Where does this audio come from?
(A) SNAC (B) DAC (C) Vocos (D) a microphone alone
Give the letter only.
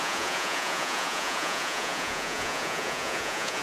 C